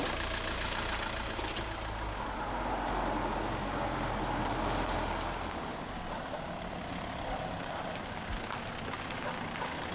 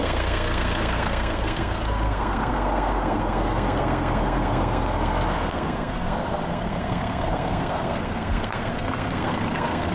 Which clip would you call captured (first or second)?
first